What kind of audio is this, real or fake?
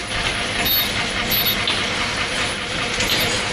real